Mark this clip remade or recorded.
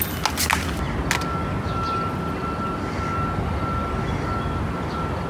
recorded